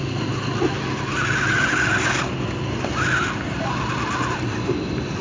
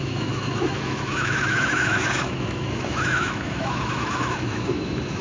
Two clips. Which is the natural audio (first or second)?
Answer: first